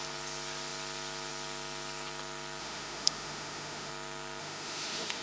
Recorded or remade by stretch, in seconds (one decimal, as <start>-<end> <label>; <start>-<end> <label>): 0.0-2.6 recorded; 2.6-3.9 remade; 3.9-4.4 recorded; 4.4-5.2 remade